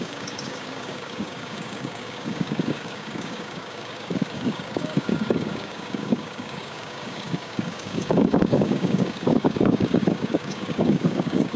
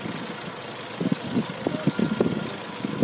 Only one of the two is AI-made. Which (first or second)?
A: first